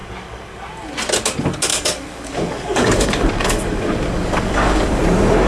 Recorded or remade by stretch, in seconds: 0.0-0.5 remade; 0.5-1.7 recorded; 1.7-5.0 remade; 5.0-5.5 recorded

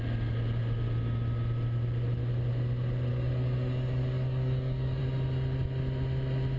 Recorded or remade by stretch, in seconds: 0.0-3.1 recorded; 3.1-5.0 remade; 5.0-6.6 recorded

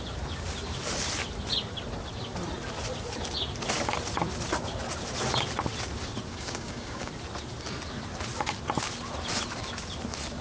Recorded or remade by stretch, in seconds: 0.0-6.3 recorded; 6.3-7.1 remade; 7.1-10.4 recorded

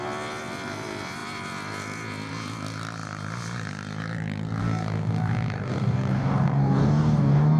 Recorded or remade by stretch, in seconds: 0.0-4.6 recorded; 4.6-7.6 remade

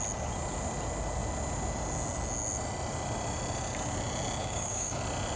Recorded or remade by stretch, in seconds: 0.0-4.4 recorded; 4.4-5.0 remade; 5.0-5.4 recorded

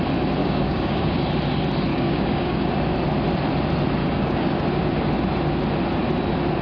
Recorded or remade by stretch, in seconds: 0.0-0.4 recorded; 0.4-1.2 remade; 1.2-1.9 recorded; 1.9-2.7 remade; 2.7-4.0 recorded; 4.0-4.6 remade; 4.6-6.6 recorded

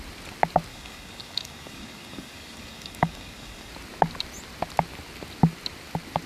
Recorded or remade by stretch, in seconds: 0.0-0.7 recorded; 0.7-3.7 remade; 3.7-6.3 recorded